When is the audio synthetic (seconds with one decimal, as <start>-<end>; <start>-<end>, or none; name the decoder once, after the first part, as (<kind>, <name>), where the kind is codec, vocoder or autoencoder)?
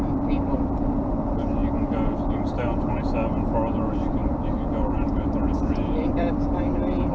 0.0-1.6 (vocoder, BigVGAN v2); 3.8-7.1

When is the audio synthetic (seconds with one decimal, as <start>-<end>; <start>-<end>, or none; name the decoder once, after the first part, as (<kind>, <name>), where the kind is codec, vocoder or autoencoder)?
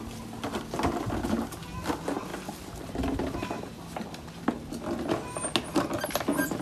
none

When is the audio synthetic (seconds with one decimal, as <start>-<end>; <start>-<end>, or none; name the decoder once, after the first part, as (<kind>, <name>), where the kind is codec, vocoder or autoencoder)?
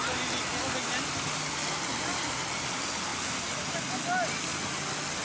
none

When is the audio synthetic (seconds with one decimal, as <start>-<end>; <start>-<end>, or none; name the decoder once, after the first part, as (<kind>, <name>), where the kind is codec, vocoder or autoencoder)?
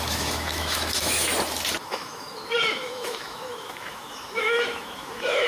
0.0-1.3 (autoencoder, DAC-VAE); 1.8-5.5